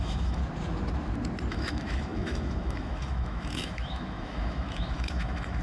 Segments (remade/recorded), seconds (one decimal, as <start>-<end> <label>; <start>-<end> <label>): 0.0-0.4 remade; 0.4-1.5 recorded; 1.5-5.6 remade